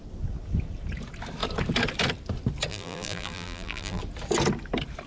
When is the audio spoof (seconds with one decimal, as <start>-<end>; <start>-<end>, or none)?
2.7-4.0

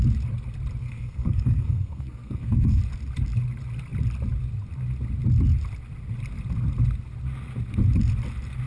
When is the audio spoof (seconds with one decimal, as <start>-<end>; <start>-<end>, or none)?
0.8-2.8

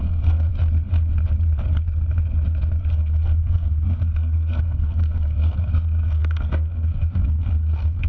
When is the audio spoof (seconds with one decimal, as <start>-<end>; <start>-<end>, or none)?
0.0-0.5; 2.9-8.1

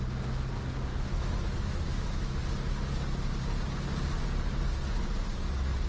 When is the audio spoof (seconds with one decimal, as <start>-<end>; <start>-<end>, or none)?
0.9-2.4

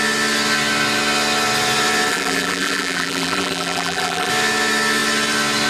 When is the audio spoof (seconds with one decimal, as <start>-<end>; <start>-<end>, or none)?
2.1-4.3